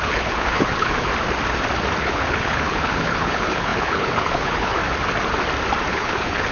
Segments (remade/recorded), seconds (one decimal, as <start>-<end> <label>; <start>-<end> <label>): 0.0-1.1 remade; 1.1-2.0 recorded; 2.0-4.8 remade; 4.8-5.9 recorded; 5.9-6.5 remade